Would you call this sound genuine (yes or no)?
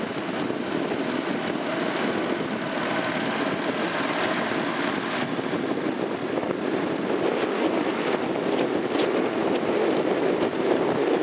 yes